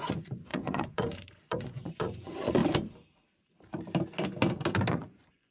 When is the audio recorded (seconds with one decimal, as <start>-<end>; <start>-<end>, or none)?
2.6-4.9